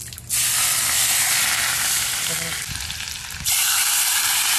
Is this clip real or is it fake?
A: real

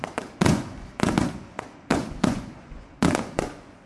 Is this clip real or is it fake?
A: fake